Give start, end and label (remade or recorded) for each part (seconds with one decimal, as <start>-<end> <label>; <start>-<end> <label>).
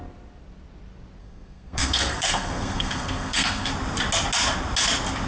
0.0-1.2 recorded; 1.2-3.7 remade; 3.7-5.3 recorded